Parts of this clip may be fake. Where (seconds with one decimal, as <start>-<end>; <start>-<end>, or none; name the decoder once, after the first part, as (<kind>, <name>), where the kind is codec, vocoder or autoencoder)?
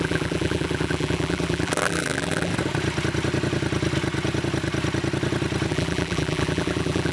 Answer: 0.0-2.5 (vocoder, BigVGAN v2); 5.7-7.1